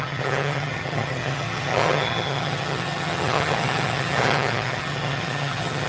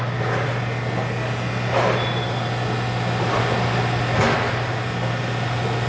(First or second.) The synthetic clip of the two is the first